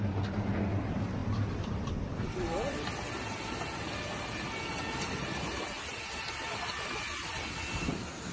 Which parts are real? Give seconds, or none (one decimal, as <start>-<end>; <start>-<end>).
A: 0.0-8.3